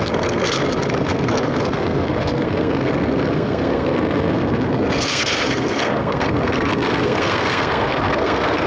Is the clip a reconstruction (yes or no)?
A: yes